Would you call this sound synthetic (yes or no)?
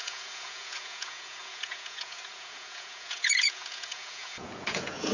yes